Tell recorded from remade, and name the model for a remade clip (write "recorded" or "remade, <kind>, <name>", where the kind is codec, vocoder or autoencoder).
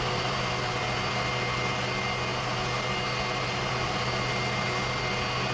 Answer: recorded